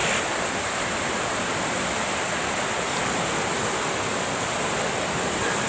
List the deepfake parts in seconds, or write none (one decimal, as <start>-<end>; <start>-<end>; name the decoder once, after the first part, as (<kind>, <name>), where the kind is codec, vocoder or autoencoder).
none